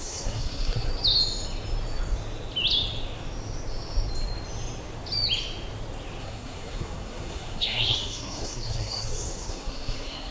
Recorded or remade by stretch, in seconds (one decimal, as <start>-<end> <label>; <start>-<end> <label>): 0.0-0.9 remade; 0.9-6.2 recorded; 6.2-10.3 remade